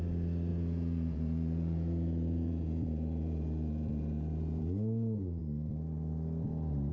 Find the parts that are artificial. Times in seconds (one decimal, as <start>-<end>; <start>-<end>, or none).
0.5-4.6